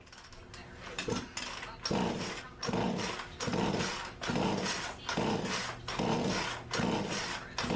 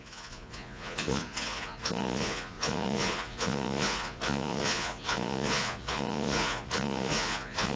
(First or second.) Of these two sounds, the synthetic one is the second